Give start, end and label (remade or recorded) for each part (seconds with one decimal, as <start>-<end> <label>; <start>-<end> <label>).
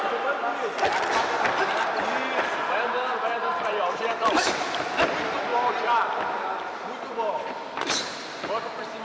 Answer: 0.0-9.0 recorded